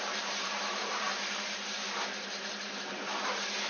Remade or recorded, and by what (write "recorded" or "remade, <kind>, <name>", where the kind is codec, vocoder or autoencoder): remade, vocoder, BigVGAN v2